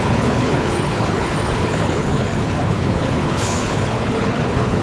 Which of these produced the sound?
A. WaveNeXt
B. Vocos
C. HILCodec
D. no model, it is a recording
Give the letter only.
C